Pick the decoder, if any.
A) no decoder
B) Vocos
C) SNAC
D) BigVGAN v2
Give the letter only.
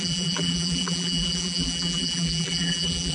D